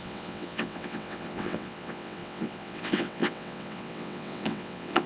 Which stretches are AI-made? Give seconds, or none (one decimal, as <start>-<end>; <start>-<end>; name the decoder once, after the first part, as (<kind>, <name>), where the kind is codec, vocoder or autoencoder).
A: 0.0-5.1 (vocoder, WaveNeXt)